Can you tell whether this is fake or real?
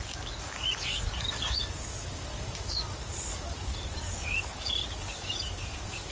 fake